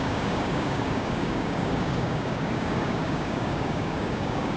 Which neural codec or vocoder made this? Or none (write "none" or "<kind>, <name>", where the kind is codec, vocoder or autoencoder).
codec, DAC